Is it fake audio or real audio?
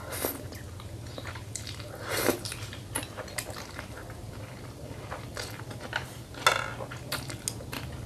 real